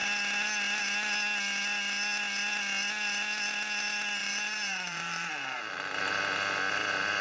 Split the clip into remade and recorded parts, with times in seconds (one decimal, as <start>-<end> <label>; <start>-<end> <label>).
0.0-4.2 recorded; 4.2-5.9 remade; 5.9-7.2 recorded